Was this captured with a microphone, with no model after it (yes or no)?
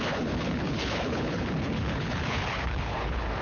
no